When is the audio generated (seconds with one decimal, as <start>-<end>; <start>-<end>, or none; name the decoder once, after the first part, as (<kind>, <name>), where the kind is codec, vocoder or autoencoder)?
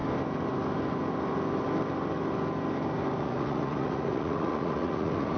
3.2-5.4 (vocoder, Vocos)